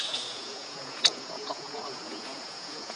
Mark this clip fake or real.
fake